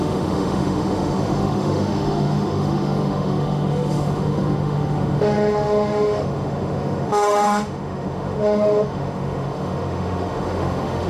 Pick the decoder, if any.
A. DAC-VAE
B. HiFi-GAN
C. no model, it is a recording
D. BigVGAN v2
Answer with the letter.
A